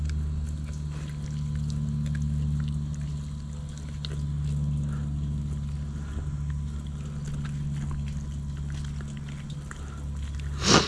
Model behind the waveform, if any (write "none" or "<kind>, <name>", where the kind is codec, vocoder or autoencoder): none